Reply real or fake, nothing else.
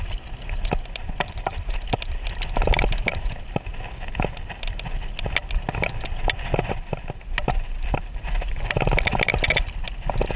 real